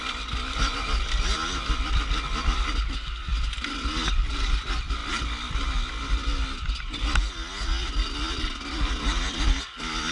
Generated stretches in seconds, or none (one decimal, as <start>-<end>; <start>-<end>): none